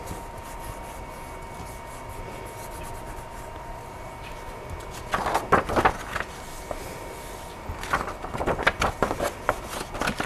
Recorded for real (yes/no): yes